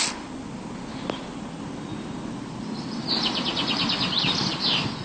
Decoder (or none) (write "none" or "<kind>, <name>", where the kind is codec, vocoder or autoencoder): none